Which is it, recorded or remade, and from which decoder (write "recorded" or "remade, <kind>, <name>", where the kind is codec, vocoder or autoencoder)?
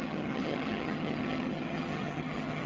remade, vocoder, HiFi-GAN